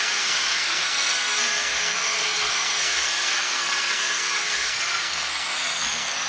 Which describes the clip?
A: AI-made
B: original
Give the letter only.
A